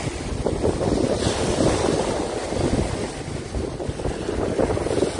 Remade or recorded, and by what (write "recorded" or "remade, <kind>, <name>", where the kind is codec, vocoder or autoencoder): recorded